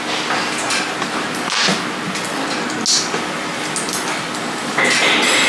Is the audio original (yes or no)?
yes